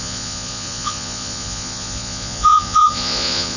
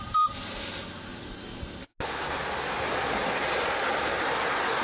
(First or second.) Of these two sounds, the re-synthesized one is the first